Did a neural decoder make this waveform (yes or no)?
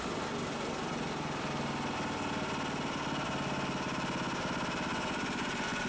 no